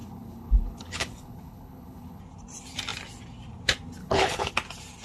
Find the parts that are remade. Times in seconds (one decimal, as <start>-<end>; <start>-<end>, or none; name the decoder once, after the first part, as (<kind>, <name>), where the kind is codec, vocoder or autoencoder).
0.0-2.2 (codec, HILCodec); 4.0-4.5

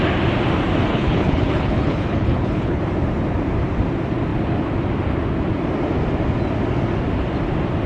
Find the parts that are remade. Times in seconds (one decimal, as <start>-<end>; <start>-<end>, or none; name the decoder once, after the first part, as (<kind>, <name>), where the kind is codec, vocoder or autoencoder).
0.9-2.8 (codec, HILCodec)

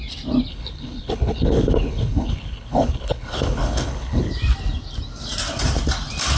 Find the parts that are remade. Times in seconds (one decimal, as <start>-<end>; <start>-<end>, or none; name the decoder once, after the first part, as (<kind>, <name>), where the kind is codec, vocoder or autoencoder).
0.5-4.3 (codec, HILCodec)

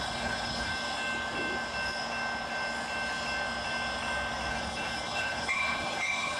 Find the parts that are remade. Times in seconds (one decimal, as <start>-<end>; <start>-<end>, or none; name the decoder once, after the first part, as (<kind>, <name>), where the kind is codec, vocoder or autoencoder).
0.0-0.7 (codec, HILCodec); 4.5-6.4

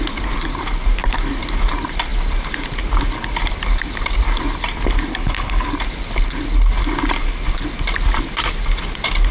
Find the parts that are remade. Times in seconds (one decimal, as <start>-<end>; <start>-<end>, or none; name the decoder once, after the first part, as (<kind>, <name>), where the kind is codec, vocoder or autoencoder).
5.1-5.7 (codec, HILCodec)

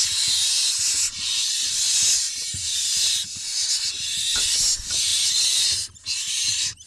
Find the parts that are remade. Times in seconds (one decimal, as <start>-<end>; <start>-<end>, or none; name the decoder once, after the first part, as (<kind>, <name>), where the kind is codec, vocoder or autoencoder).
none